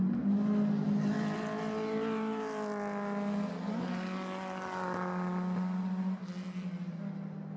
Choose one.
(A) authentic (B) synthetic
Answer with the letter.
A